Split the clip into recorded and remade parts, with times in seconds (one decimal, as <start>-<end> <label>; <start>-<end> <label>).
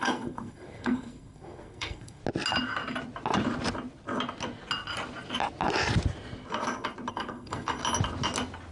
0.0-2.2 remade; 2.2-7.1 recorded; 7.1-7.8 remade; 7.8-8.7 recorded